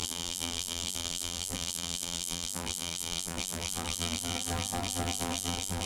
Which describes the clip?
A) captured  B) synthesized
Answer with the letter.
B